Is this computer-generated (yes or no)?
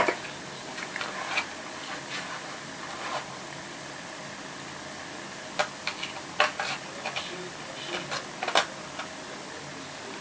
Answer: no